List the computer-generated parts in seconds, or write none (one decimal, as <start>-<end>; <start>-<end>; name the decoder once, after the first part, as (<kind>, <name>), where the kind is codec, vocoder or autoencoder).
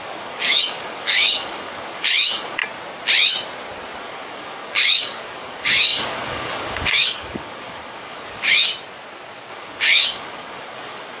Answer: 0.0-2.6 (codec, DAC); 4.0-8.7; 9.5-11.2